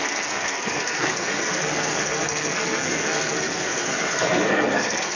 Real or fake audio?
fake